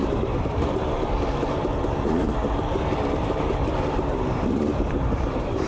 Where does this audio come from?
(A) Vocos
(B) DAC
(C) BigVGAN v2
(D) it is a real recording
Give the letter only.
C